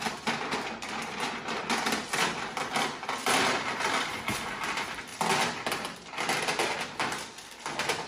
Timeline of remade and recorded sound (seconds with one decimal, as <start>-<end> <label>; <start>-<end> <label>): 0.0-8.1 recorded